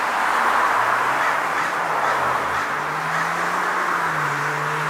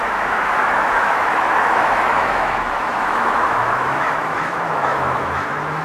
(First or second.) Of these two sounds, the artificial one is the second